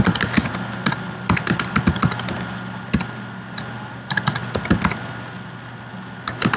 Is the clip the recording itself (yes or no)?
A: yes